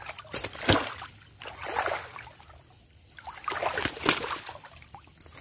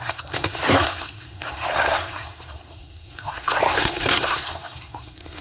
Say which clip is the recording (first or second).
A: first